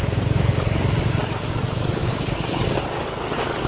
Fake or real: fake